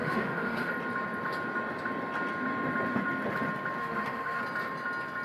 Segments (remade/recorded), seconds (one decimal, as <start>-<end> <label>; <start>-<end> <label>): 0.0-0.7 remade; 0.7-3.8 recorded; 3.8-4.4 remade; 4.4-5.2 recorded